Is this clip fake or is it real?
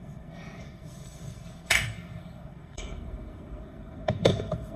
fake